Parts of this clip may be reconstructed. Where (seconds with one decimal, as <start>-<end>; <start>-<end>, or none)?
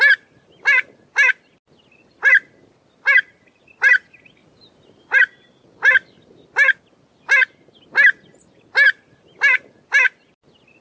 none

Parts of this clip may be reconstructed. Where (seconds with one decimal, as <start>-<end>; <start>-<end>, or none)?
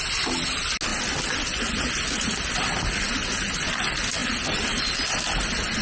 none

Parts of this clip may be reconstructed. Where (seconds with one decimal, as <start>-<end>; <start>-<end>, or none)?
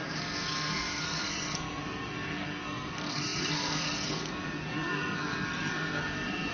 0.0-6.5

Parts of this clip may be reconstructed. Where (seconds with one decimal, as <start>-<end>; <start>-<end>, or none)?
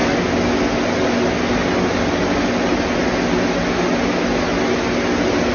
none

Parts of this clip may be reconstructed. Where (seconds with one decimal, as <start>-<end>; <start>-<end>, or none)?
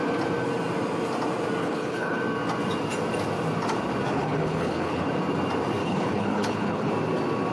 1.6-2.2; 4.1-5.1; 5.8-6.9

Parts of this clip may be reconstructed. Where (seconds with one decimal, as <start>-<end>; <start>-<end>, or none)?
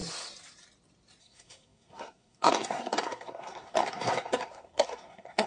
1.2-5.5